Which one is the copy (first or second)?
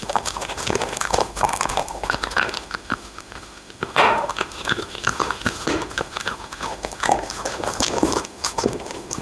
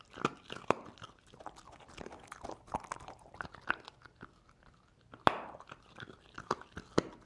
first